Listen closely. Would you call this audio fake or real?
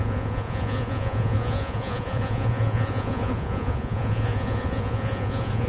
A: fake